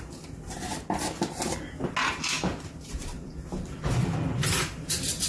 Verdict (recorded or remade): recorded